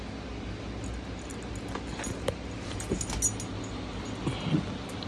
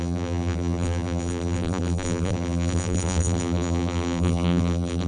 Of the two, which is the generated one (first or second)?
second